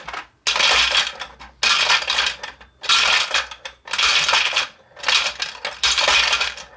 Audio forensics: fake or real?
real